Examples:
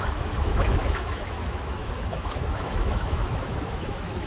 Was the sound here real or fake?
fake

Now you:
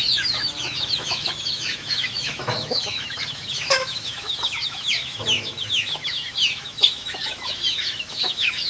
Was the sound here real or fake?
fake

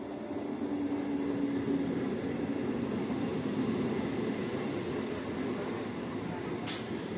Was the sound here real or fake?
real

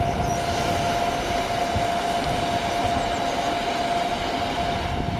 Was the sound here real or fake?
real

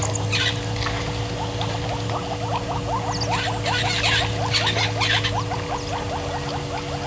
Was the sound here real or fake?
real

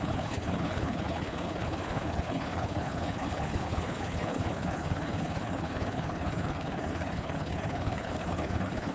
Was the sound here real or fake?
fake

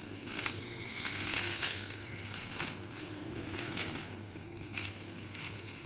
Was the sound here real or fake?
fake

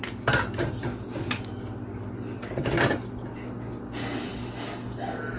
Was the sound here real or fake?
real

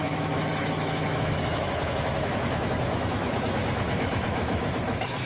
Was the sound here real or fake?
fake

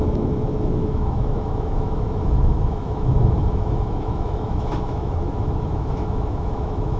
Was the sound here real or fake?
fake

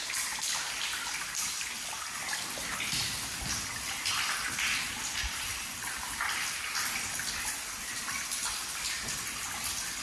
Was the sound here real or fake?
real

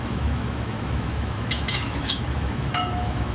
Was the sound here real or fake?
fake